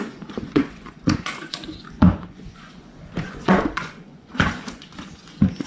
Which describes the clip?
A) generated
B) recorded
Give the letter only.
A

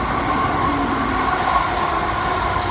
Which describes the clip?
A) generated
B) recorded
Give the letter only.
B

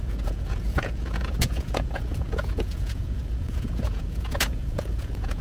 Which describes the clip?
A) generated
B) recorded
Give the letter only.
A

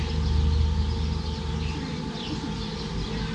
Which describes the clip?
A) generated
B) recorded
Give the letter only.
B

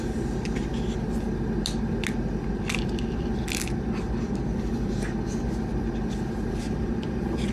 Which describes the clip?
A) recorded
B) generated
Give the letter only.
A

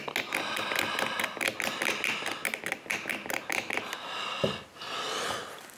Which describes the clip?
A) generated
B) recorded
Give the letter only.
B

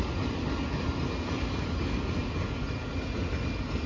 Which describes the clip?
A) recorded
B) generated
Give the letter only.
A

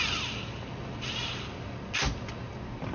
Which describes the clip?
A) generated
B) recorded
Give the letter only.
B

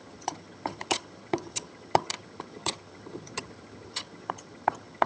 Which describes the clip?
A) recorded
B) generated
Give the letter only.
B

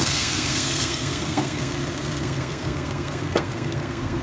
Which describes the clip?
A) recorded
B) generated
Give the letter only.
B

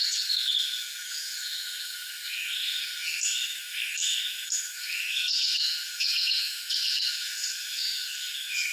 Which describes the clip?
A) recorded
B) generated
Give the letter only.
B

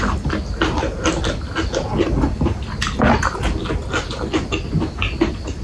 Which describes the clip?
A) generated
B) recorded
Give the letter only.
B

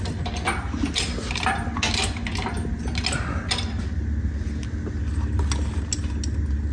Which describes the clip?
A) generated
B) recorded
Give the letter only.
B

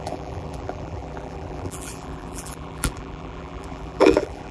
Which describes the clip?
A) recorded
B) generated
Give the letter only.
B